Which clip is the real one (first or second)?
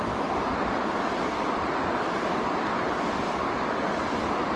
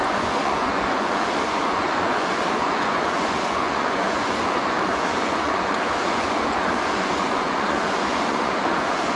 first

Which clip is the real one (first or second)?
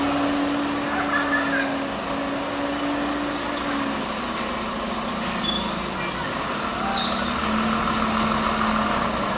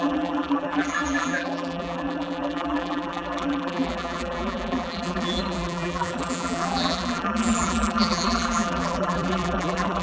first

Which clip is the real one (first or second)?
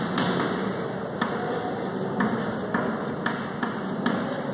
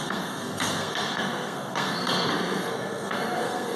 first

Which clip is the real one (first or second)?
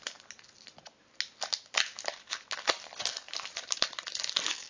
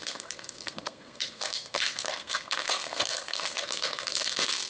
first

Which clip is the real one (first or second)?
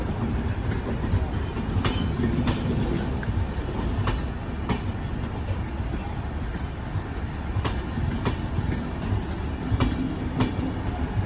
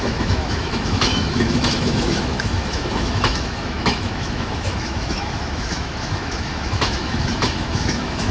first